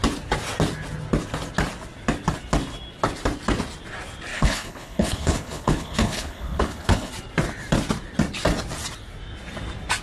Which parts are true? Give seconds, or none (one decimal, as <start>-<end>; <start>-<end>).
0.0-4.3; 7.1-10.0